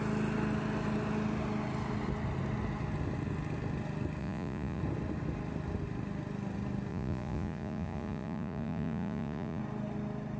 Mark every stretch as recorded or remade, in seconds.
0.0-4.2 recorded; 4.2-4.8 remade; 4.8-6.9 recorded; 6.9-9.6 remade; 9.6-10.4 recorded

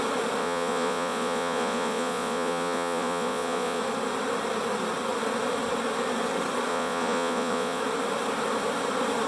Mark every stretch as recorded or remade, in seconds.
0.0-0.4 recorded; 0.4-3.8 remade; 3.8-6.7 recorded; 6.7-7.8 remade; 7.8-9.3 recorded